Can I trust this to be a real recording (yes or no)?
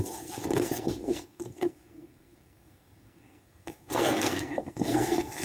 no